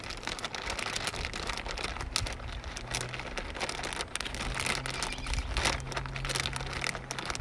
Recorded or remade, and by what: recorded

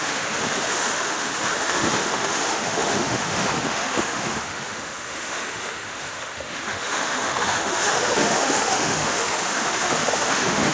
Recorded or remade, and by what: remade, autoencoder, DAC-VAE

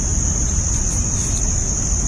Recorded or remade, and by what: recorded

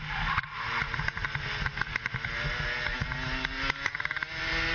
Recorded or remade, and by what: recorded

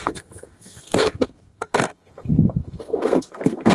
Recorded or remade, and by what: remade, codec, SNAC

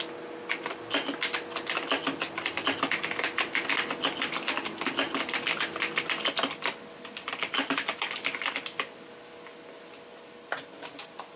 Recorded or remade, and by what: recorded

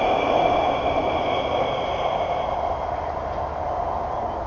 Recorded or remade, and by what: recorded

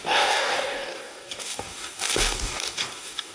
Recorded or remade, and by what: remade, codec, DAC